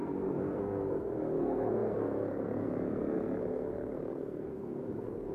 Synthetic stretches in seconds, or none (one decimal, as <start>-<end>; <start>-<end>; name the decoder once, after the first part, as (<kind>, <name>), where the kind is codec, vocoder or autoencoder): 0.0-5.3 (codec, SNAC)